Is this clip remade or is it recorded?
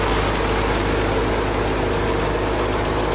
recorded